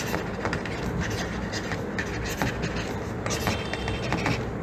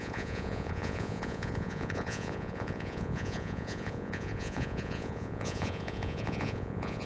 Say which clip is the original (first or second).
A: first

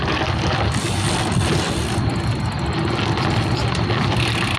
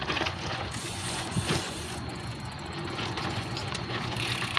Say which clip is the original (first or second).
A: first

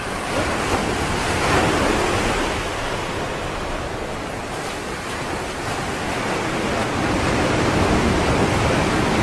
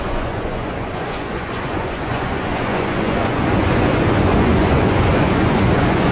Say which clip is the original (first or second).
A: first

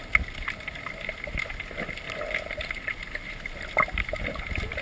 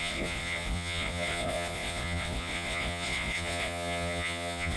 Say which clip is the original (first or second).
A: first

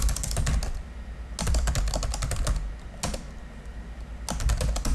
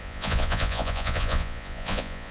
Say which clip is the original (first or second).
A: first